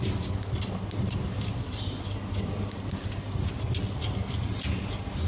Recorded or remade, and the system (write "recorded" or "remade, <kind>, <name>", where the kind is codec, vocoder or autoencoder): recorded